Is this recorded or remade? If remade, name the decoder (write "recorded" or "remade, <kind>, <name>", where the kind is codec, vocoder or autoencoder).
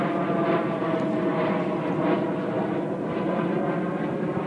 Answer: recorded